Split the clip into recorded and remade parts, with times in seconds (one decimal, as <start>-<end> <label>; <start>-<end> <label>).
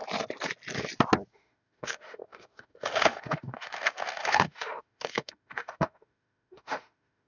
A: 0.0-1.3 recorded; 1.3-7.3 remade